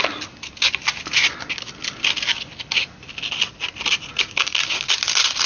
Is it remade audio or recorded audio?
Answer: recorded